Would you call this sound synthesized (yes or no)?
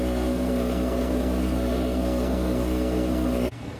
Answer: yes